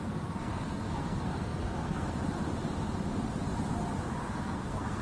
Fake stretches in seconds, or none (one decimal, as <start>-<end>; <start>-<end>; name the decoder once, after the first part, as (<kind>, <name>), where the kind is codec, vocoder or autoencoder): 0.0-2.2 (codec, SNAC); 4.3-5.0